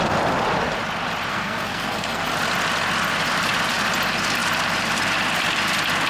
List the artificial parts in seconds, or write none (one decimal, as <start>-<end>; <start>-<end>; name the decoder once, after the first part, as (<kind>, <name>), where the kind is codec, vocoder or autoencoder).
1.3-2.3 (codec, SNAC)